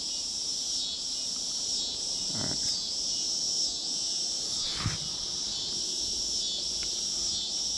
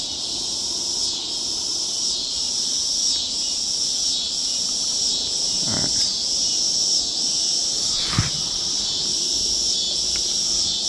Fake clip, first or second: second